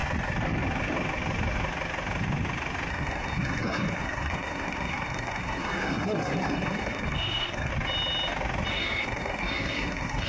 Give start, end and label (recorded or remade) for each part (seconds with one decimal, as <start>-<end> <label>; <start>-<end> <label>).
0.0-2.9 recorded; 2.9-7.7 remade; 7.7-8.7 recorded; 8.7-10.3 remade

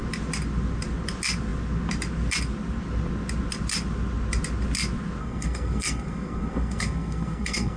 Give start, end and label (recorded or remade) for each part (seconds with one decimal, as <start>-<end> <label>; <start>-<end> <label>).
0.0-5.2 recorded; 5.2-7.8 remade